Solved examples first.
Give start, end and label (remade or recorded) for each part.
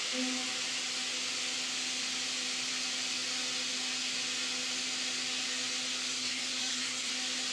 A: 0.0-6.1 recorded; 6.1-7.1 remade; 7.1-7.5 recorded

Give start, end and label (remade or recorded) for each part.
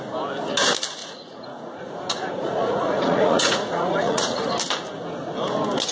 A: 0.0-1.0 recorded; 1.0-4.5 remade; 4.5-5.9 recorded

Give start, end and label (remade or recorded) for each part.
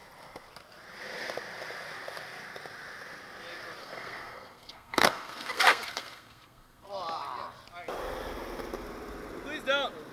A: 0.0-3.8 recorded; 3.8-6.9 remade; 6.9-10.1 recorded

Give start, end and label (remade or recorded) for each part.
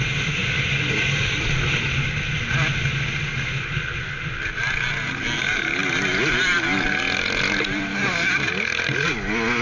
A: 0.0-9.6 recorded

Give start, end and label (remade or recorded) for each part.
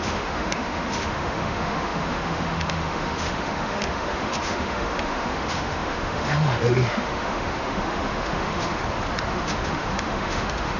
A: 0.0-8.8 remade; 8.8-9.3 recorded; 9.3-10.8 remade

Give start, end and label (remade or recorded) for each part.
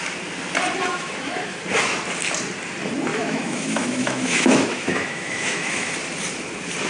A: 0.0-0.9 recorded; 0.9-1.6 remade; 1.6-3.1 recorded; 3.1-5.9 remade; 5.9-6.9 recorded